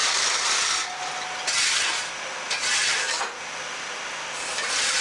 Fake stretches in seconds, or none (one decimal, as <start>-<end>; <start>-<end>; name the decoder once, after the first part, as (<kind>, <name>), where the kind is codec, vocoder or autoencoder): 0.0-5.0 (vocoder, BigVGAN v2)